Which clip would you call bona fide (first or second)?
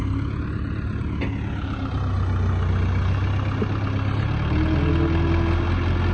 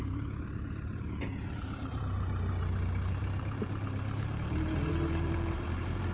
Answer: first